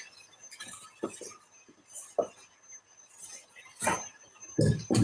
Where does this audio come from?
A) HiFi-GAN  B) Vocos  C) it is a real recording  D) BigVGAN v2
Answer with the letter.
C